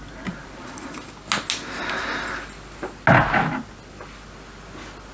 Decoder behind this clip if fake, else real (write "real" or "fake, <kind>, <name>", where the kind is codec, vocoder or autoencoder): real